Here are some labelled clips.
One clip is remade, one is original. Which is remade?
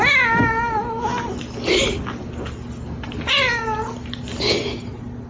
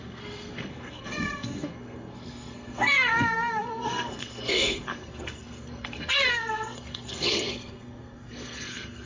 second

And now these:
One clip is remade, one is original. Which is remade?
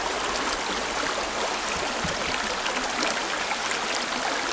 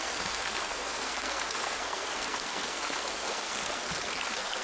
second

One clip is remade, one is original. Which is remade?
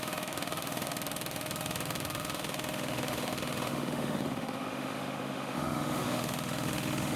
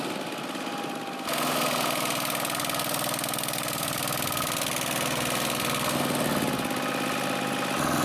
first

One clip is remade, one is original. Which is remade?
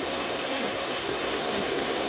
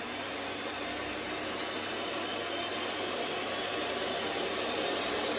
first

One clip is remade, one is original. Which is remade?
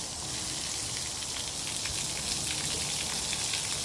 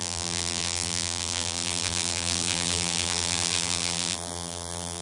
second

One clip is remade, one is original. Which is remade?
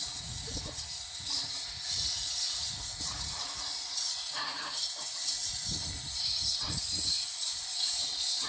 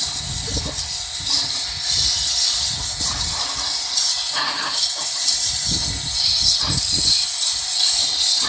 first